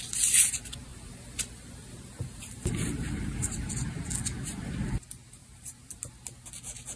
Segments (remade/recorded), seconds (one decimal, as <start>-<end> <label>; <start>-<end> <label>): 0.0-0.9 recorded; 0.9-3.7 remade; 3.7-5.4 recorded; 5.4-6.0 remade; 6.0-7.0 recorded